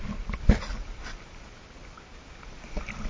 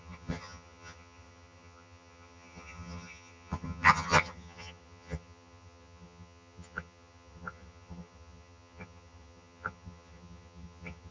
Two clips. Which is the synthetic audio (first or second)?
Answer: second